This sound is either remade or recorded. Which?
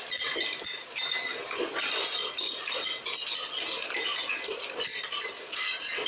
recorded